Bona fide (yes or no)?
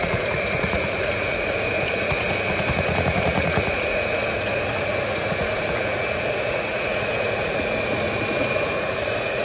no